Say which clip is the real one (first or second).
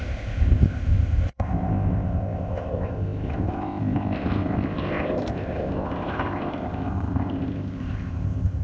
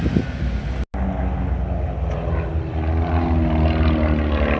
second